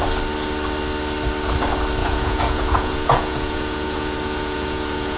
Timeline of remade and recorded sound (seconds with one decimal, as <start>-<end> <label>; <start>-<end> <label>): 0.0-2.0 recorded; 2.0-5.2 remade